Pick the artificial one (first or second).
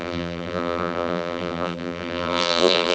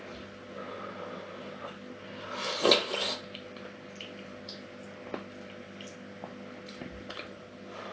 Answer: first